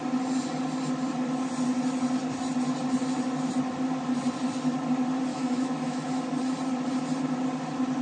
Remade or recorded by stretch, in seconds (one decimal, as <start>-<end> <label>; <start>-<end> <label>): 0.0-5.3 recorded; 5.3-6.2 remade; 6.2-8.0 recorded